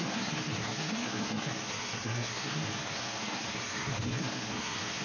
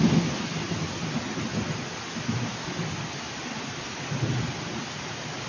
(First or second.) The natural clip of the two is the second